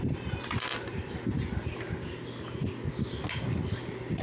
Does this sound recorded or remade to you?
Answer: recorded